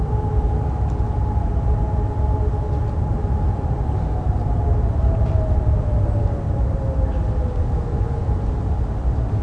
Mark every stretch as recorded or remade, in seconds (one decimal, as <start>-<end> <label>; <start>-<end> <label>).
0.0-7.6 recorded; 7.6-8.2 remade; 8.2-9.4 recorded